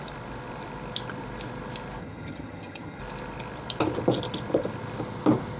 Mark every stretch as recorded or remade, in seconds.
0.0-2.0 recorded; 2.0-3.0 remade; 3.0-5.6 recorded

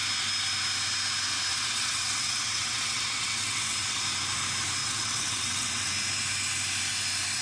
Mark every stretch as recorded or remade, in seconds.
0.0-1.5 recorded; 1.5-4.0 remade; 4.0-4.8 recorded; 4.8-5.9 remade; 5.9-7.4 recorded